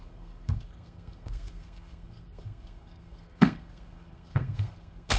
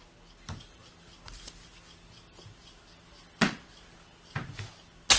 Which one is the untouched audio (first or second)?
second